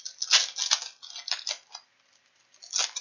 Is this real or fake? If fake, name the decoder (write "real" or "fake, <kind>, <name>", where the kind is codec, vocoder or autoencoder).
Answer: real